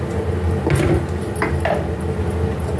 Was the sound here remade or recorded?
recorded